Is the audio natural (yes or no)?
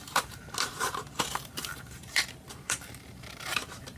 no